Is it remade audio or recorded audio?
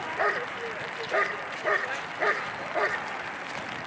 recorded